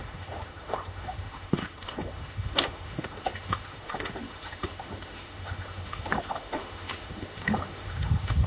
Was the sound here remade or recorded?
remade